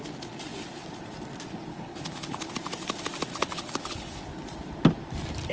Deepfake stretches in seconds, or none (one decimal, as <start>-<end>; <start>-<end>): 1.7-2.5; 3.3-4.2